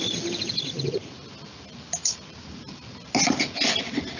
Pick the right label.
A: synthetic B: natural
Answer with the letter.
B